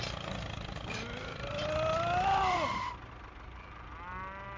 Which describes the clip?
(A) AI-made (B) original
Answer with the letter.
B